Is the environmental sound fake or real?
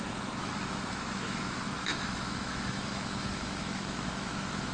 fake